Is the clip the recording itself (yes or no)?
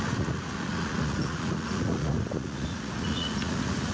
no